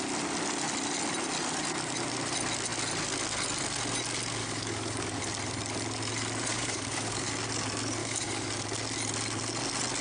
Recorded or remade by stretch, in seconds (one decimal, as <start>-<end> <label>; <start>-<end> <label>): 0.0-4.4 recorded; 4.4-5.2 remade; 5.2-6.5 recorded; 6.5-7.3 remade; 7.3-8.0 recorded; 8.0-8.5 remade; 8.5-10.0 recorded